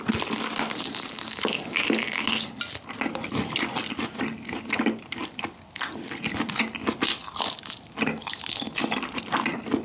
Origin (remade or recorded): recorded